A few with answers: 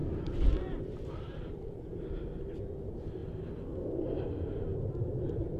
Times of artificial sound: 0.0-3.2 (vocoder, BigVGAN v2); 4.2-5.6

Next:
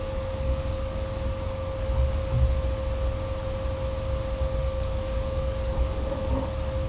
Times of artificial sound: 0.0-2.2 (codec, DAC); 4.4-6.9